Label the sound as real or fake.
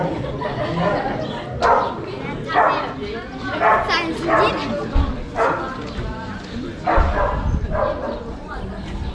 real